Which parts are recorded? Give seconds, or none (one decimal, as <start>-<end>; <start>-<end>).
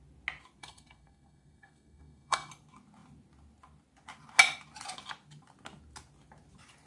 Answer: 0.0-0.6; 2.5-6.9